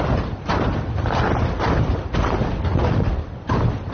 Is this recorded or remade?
remade